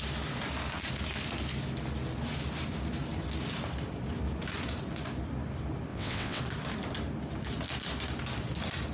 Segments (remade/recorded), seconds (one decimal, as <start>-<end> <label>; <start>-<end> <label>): 0.0-5.9 recorded; 5.9-6.4 remade; 6.4-8.9 recorded